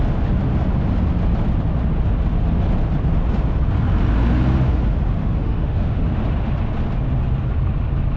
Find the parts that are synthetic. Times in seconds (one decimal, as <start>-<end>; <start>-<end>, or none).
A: 5.2-6.0